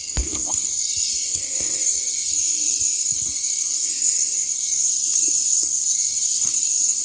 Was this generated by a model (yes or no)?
yes